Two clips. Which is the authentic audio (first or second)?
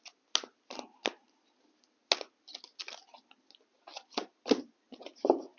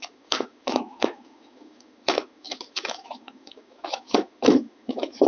first